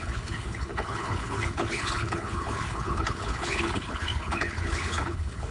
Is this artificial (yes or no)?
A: yes